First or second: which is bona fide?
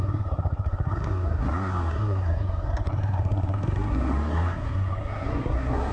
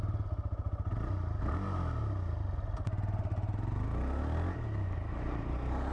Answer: second